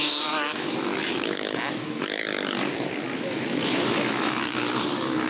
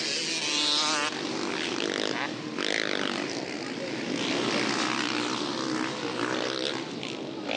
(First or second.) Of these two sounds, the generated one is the first